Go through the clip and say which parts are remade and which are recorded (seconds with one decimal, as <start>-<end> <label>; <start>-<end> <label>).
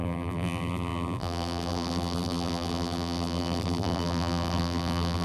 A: 0.0-5.2 remade